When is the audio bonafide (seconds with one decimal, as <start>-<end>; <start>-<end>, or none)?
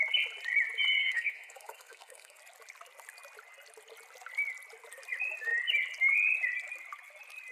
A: 0.0-1.0; 2.4-7.5